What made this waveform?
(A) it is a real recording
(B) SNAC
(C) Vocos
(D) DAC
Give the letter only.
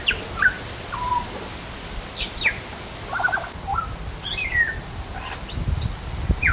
A